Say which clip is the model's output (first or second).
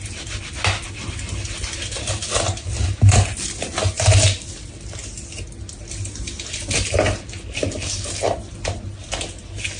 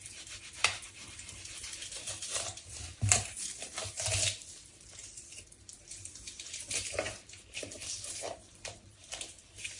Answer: second